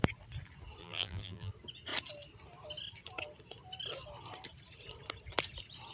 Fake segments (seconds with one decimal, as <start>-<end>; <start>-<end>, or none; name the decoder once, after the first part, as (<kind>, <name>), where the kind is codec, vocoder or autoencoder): 0.8-1.5 (vocoder, BigVGAN v2)